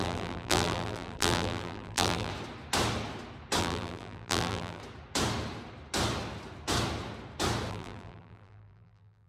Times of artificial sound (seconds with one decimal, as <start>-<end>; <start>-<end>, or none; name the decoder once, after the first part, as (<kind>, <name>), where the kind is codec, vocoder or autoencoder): 0.0-2.3 (vocoder, BigVGAN v2); 3.6-4.8; 7.7-9.3